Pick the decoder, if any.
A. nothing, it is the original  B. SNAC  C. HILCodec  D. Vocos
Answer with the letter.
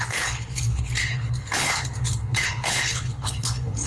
C